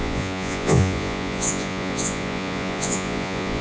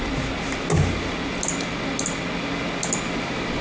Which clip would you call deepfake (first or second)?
first